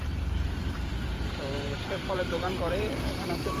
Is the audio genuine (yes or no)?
no